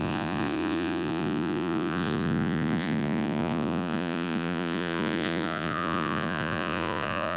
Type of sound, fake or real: fake